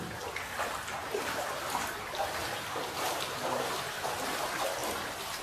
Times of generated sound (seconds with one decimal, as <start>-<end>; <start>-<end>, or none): 1.0-4.2